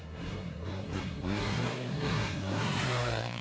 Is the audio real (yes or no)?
no